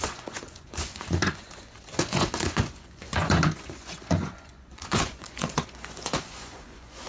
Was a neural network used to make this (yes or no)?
yes